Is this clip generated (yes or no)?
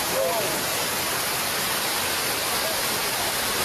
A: no